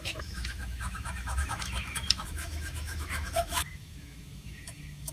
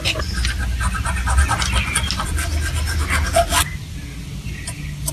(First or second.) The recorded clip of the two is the second